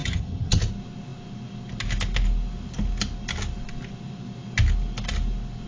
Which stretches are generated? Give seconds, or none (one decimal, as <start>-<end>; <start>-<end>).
0.0-0.6